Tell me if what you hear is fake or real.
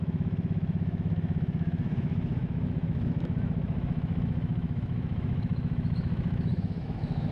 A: fake